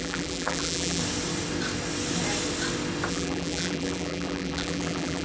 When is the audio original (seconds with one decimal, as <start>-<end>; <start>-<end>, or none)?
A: 1.0-3.1